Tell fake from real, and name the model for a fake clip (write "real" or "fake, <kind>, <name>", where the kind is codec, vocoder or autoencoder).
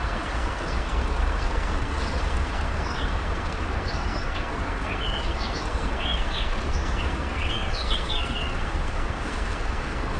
fake, codec, SNAC